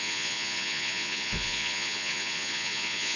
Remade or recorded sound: remade